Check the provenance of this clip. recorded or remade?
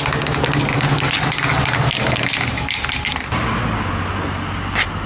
recorded